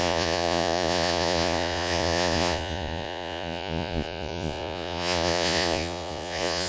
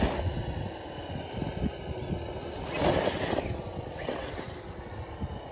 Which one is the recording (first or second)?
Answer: second